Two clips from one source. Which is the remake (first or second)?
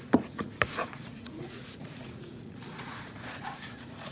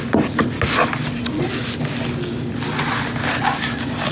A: first